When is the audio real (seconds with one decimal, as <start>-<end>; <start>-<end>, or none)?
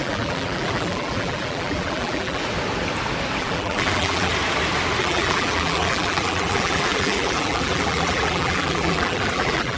2.4-3.4; 4.3-5.0